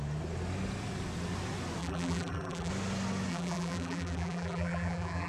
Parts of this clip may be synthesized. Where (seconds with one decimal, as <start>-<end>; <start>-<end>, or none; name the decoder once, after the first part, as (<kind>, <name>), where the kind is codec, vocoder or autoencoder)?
1.8-2.7 (vocoder, BigVGAN v2); 3.3-5.3